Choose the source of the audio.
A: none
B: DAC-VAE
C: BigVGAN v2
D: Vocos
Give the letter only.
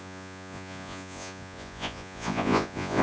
D